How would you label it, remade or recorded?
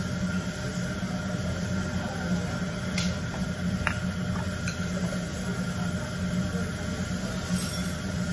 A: recorded